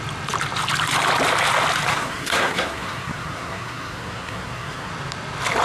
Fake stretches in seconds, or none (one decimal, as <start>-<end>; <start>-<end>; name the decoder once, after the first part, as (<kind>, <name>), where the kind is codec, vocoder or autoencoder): 1.9-4.9 (codec, SNAC)